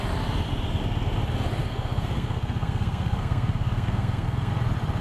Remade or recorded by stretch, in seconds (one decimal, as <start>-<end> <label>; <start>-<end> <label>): 0.0-1.6 recorded; 1.6-4.5 remade; 4.5-5.0 recorded